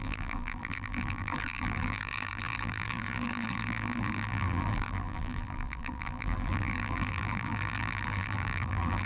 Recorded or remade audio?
remade